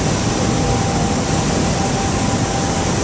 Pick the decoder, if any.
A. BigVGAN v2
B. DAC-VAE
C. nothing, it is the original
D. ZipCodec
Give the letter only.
C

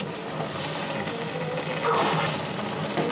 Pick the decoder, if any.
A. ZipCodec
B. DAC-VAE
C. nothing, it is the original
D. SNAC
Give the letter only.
C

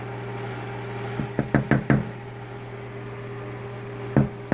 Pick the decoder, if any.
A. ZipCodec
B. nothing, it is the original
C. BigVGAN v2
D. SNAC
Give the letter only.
B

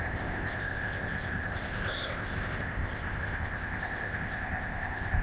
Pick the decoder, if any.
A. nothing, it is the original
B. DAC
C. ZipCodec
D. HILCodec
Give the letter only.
C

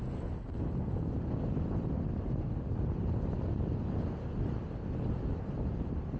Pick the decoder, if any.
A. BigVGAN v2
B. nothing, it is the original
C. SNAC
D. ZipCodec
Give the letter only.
B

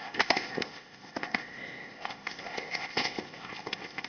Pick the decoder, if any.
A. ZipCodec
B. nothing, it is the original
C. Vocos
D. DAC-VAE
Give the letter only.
A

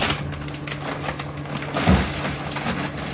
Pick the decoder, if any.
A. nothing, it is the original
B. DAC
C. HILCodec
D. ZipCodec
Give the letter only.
A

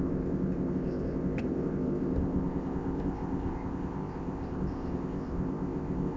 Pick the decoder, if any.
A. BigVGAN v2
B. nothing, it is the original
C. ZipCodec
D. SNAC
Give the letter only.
C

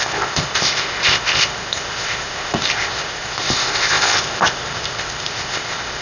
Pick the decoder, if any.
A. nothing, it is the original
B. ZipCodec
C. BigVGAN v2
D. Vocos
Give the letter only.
B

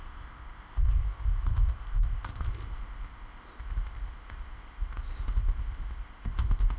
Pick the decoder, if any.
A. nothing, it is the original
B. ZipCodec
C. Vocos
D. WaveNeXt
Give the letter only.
B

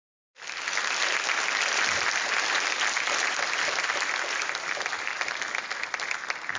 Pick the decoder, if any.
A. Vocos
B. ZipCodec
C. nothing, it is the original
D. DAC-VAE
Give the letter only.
C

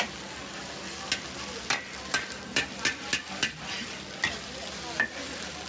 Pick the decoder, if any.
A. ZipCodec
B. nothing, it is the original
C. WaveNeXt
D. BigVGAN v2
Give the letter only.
B